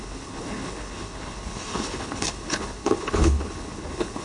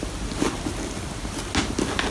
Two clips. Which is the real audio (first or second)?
second